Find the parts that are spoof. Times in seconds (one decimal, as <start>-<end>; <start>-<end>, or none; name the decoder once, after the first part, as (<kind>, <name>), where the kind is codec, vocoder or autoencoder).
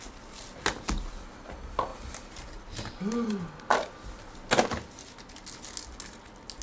1.9-3.4 (vocoder, BigVGAN v2)